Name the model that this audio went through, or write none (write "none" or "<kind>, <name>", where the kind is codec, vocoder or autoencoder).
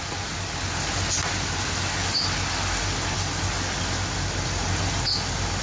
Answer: none